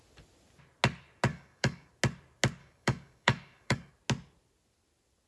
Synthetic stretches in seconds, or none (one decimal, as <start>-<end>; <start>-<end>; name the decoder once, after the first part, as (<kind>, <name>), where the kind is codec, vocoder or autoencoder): 1.3-1.9 (codec, DAC); 2.6-3.9

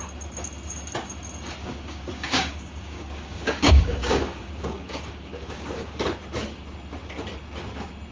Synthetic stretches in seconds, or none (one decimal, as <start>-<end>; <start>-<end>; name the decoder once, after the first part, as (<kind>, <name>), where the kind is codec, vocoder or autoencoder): 1.6-6.0 (codec, DAC)

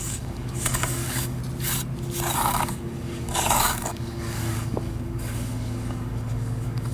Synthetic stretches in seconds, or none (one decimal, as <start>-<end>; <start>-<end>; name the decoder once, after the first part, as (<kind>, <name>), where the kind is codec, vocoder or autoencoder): 0.0-1.4 (codec, DAC); 2.3-6.9

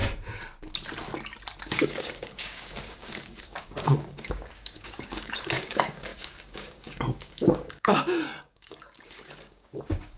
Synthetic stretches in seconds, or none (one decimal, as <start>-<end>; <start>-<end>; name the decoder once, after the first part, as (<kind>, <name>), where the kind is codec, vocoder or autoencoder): 1.6-10.2 (codec, DAC)

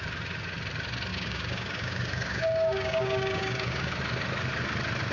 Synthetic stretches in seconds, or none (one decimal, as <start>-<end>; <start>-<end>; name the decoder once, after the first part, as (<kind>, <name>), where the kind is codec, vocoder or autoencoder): 1.1-4.0 (codec, DAC)